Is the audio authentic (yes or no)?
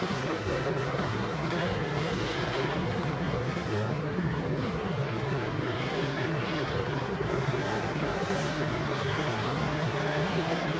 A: no